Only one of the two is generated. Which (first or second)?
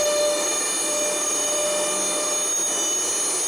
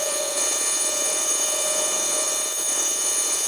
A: second